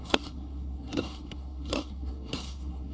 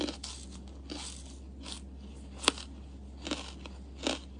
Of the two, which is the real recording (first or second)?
second